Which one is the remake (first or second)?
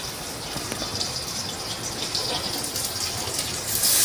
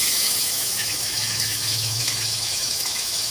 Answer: second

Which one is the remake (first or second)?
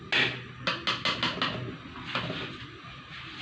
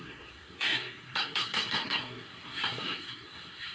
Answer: second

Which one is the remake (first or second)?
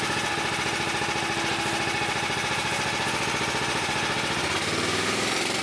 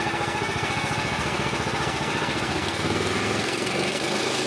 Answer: second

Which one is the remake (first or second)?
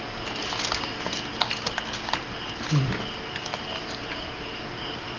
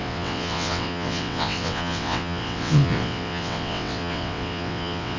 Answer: second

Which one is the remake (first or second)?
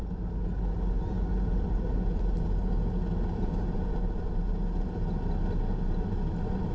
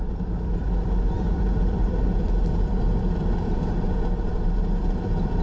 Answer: second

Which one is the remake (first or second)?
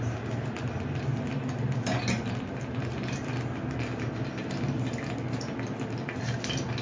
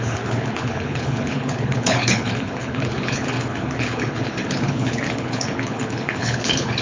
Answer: second